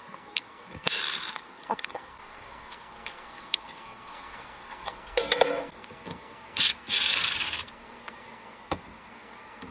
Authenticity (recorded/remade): remade